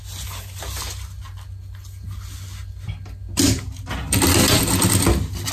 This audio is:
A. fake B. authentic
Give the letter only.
B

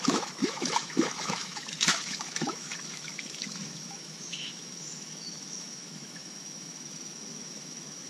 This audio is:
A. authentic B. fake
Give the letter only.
B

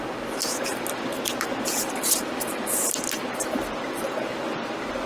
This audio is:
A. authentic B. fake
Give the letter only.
A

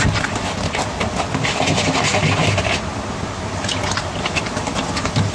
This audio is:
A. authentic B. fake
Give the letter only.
A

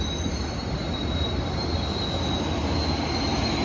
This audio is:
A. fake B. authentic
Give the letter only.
B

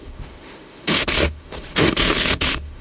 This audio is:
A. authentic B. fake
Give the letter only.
B